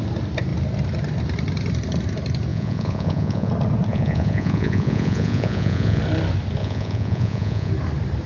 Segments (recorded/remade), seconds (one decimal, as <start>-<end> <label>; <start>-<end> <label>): 0.0-2.5 recorded; 2.5-3.5 remade; 3.5-3.9 recorded; 3.9-6.0 remade; 6.0-6.6 recorded; 6.6-7.7 remade; 7.7-8.3 recorded